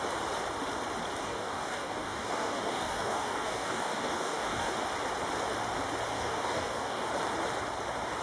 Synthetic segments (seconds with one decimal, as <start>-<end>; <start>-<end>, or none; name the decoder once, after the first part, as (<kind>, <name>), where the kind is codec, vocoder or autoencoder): 1.2-4.7 (codec, DAC); 6.1-7.1